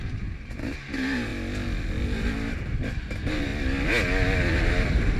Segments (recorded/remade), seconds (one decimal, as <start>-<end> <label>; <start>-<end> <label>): 0.0-1.3 remade; 1.3-3.1 recorded; 3.1-3.5 remade; 3.5-4.7 recorded; 4.7-5.2 remade